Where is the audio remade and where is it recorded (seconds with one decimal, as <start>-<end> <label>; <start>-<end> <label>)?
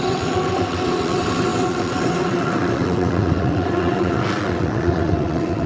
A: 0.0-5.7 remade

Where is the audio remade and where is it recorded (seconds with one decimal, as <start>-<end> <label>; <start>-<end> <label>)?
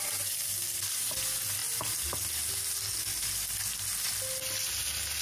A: 0.0-5.2 recorded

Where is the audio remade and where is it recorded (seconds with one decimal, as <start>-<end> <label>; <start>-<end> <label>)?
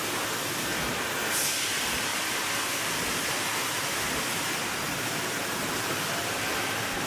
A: 0.0-2.1 recorded; 2.1-6.4 remade; 6.4-7.1 recorded